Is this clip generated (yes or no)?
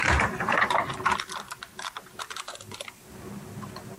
no